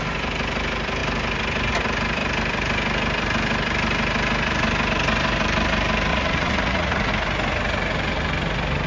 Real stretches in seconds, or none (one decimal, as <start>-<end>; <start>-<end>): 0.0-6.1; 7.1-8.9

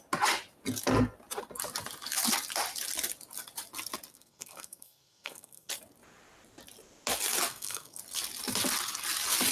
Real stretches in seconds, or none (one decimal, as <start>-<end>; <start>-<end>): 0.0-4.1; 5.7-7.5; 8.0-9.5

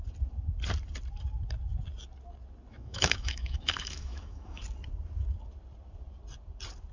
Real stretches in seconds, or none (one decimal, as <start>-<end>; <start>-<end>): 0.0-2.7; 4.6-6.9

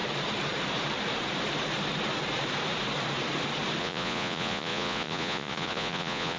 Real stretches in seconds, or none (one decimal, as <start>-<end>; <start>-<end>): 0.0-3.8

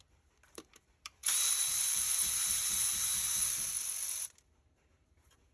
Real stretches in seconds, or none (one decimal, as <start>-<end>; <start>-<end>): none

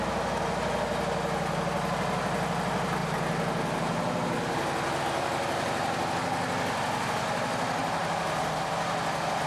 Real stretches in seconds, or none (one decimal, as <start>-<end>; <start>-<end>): 0.0-7.8; 8.7-9.5